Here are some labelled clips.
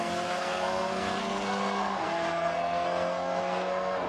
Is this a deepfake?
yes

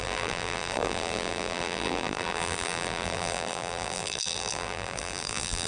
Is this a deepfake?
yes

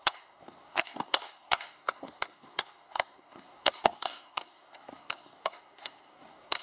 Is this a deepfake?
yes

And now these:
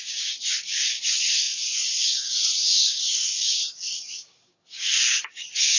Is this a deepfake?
yes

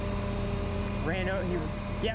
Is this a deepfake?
no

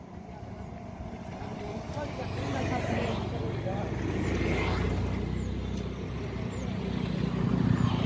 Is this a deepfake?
no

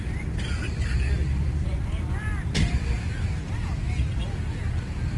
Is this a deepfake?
yes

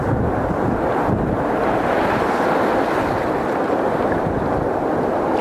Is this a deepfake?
no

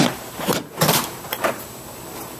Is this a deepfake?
yes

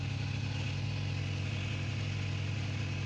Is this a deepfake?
no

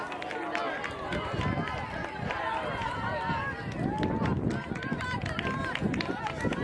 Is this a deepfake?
no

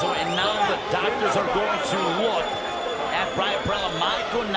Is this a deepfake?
no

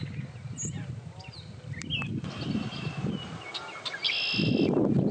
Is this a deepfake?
no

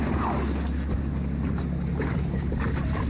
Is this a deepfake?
no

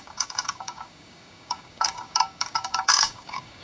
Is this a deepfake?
yes